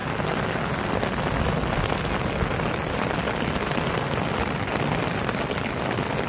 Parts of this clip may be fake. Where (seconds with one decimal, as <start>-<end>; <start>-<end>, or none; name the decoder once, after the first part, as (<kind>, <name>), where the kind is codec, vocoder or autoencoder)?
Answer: none